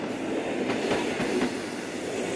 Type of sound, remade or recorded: recorded